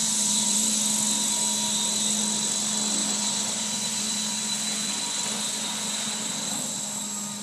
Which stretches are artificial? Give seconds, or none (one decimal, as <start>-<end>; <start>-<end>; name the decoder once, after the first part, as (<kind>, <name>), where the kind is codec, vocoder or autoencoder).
0.0-0.7 (vocoder, Vocos); 3.0-6.8